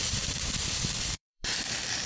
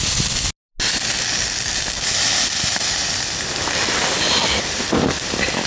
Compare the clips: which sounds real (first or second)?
second